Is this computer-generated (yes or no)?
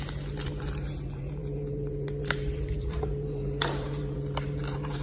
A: yes